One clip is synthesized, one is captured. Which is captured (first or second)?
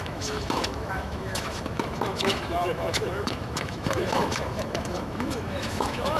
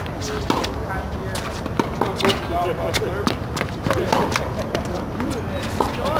second